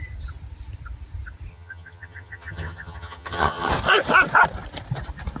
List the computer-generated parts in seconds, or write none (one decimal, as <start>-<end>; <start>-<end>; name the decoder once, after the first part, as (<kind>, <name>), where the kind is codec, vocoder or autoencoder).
1.5-3.7 (vocoder, HiFi-GAN)